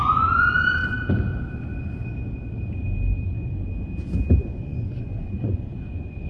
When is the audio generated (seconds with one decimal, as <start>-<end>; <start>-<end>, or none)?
0.0-0.8; 4.6-6.3